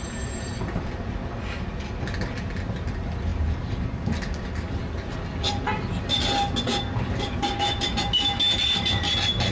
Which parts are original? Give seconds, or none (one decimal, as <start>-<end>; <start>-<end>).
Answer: 0.0-9.5